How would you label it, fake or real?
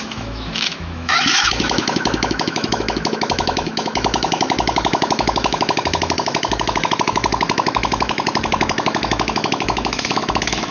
fake